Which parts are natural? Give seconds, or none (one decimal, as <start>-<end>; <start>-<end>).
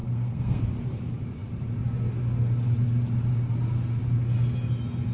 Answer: 0.6-5.1